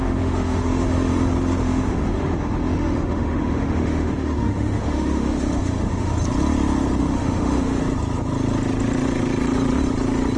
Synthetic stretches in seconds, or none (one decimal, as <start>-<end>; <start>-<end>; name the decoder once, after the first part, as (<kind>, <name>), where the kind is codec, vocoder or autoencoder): 0.0-1.1 (autoencoder, DAC-VAE); 1.6-6.1; 7.0-7.8